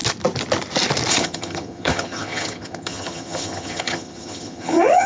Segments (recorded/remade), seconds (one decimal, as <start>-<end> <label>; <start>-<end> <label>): 0.0-1.1 recorded; 1.1-5.1 remade